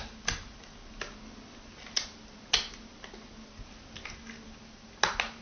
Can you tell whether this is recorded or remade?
recorded